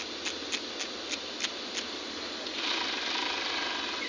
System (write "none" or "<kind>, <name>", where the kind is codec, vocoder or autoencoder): none